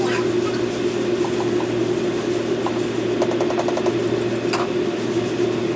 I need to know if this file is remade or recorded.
recorded